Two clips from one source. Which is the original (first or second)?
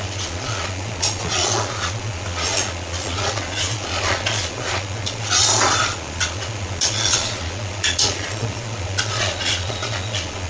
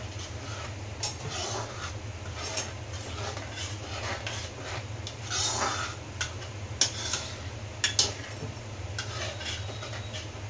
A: second